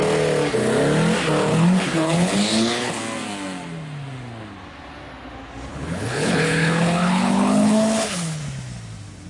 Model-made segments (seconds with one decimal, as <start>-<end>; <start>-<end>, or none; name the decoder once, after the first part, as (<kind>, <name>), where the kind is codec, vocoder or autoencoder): 1.5-3.0 (codec, HILCodec); 5.7-8.4